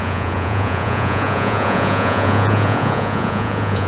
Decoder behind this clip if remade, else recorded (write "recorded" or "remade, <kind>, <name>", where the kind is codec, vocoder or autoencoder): remade, vocoder, Vocos